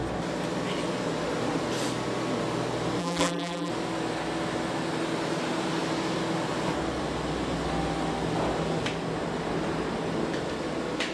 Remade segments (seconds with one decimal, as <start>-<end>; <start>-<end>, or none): 3.0-3.7